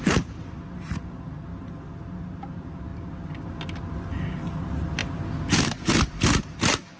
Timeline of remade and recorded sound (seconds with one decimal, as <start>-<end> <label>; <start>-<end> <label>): 0.0-7.0 recorded